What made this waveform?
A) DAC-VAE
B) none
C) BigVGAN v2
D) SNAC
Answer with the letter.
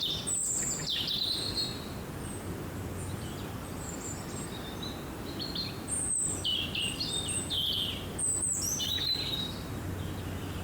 C